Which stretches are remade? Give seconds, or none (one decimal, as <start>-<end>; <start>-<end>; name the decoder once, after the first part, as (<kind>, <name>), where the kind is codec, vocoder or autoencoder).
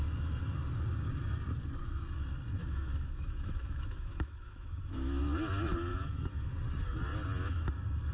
2.6-5.2 (autoencoder, DAC-VAE); 5.9-6.5